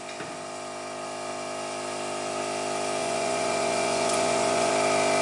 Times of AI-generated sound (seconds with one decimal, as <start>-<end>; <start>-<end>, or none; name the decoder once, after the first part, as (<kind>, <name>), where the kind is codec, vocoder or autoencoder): 3.0-4.7 (vocoder, Vocos)